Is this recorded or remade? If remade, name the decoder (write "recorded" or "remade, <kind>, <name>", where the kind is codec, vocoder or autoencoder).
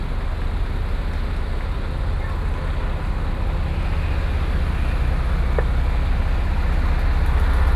recorded